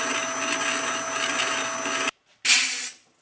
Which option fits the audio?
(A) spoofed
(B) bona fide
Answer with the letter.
B